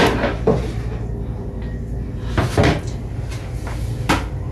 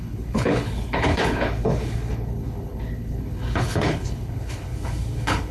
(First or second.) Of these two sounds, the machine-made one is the second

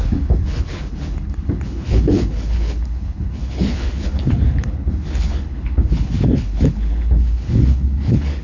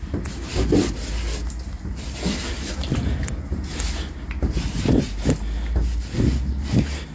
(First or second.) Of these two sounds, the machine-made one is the first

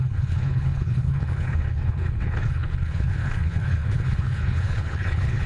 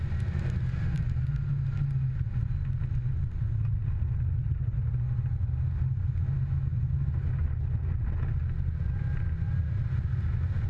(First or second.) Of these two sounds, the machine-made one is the first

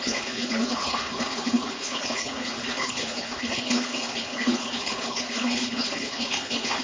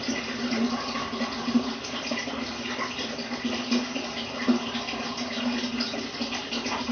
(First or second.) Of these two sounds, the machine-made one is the first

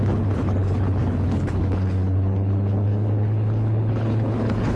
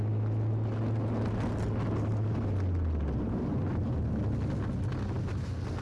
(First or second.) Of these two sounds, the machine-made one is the first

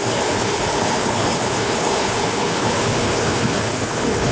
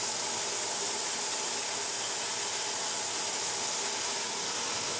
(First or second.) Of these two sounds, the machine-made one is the first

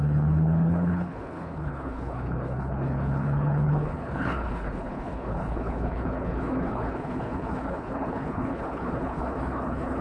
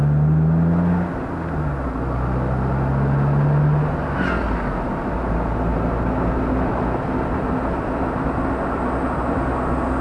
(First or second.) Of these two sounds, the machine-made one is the first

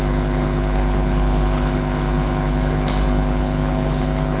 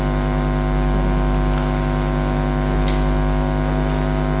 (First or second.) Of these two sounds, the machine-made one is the first